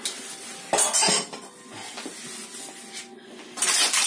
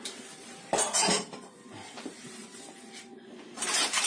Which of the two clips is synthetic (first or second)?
second